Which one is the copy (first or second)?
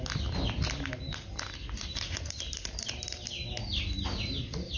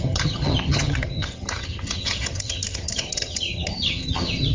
second